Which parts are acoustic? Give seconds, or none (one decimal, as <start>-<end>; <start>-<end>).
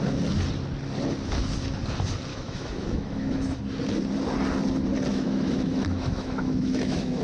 0.0-2.3; 3.6-5.1